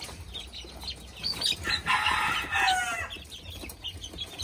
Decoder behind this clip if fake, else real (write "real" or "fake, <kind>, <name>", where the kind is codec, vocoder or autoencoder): real